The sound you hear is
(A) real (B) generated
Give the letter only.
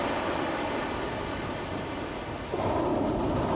A